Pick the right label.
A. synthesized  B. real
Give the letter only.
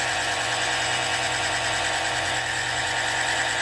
A